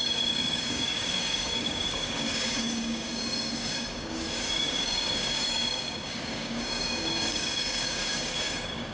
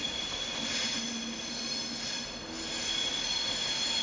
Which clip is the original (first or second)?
second